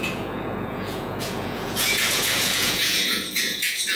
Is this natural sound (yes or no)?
no